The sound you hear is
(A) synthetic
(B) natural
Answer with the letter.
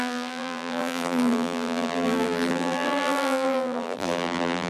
A